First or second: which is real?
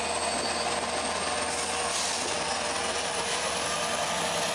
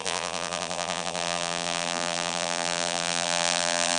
first